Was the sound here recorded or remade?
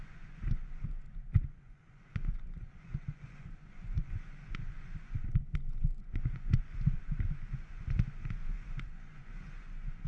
remade